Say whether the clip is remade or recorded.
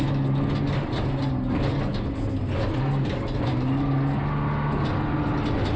recorded